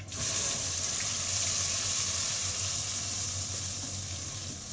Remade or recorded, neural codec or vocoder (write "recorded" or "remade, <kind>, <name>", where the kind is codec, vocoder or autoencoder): recorded